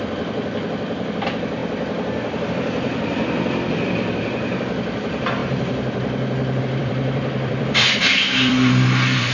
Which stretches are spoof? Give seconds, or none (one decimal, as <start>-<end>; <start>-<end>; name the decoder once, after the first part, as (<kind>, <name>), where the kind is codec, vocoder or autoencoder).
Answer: 0.0-1.6 (vocoder, BigVGAN v2); 2.5-5.4; 6.6-9.3